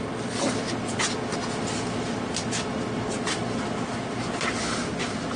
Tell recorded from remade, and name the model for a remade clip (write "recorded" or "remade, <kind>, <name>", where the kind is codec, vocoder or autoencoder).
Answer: recorded